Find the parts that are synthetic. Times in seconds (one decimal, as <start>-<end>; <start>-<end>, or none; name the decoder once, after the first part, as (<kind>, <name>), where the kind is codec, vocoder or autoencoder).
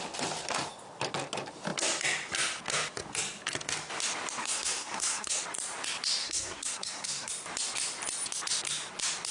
4.4-5.4 (codec, SNAC); 6.2-7.3